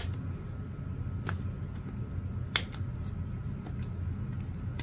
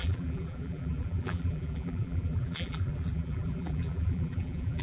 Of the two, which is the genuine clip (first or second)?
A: first